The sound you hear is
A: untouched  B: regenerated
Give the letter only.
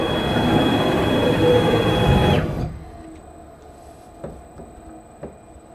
A